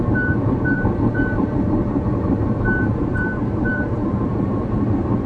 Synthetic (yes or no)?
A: yes